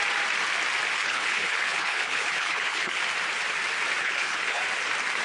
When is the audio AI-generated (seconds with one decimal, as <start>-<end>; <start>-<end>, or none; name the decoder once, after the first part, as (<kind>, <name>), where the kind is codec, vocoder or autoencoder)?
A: 1.0-3.0 (codec, HILCodec); 4.0-4.6